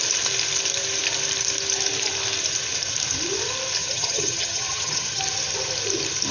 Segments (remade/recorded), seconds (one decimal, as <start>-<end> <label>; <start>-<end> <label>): 0.0-3.8 recorded; 3.8-5.2 remade; 5.2-6.3 recorded